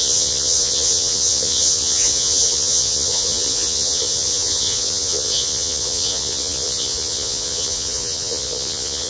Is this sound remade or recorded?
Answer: remade